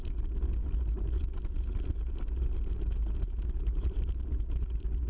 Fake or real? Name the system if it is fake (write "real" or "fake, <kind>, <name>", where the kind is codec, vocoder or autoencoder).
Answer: real